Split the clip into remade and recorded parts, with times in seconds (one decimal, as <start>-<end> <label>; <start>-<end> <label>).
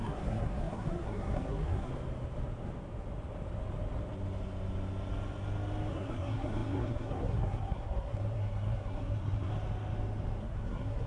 0.0-1.9 remade; 1.9-5.9 recorded; 5.9-9.5 remade; 9.5-10.4 recorded; 10.4-11.1 remade